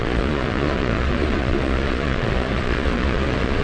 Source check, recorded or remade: remade